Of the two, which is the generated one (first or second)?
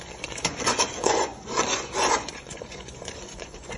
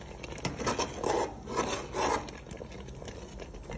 first